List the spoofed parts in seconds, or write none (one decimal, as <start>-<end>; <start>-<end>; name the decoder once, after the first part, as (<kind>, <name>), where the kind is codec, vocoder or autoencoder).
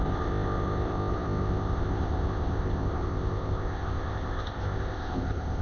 0.0-5.6 (codec, ZipCodec)